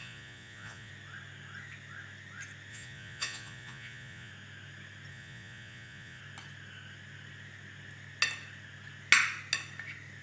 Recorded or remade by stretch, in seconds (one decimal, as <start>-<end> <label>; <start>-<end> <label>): 0.0-0.9 remade; 0.9-2.7 recorded; 2.7-4.3 remade; 4.3-5.1 recorded; 5.1-6.2 remade; 6.2-10.2 recorded